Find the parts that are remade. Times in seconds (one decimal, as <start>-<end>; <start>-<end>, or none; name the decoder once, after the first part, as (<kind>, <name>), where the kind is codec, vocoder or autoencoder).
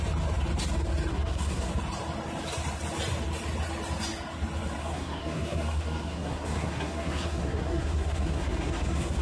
1.1-1.7 (codec, SNAC); 4.8-9.2